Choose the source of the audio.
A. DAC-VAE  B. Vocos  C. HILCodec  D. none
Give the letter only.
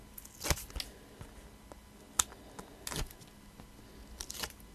D